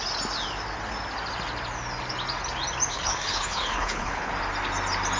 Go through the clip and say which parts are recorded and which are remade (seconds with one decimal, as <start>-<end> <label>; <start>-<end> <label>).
0.0-2.9 recorded; 2.9-4.3 remade; 4.3-5.2 recorded